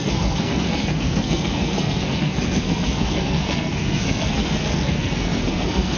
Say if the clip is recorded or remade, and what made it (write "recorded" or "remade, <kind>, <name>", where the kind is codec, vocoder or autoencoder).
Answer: remade, codec, SNAC